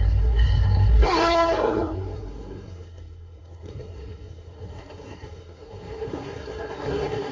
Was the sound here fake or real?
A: fake